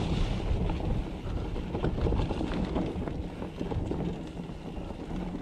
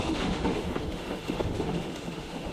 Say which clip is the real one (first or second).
first